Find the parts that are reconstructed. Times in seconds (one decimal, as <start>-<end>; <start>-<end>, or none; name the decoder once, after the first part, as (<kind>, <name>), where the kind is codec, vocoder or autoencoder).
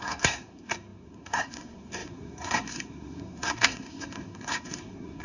0.0-5.2 (codec, SNAC)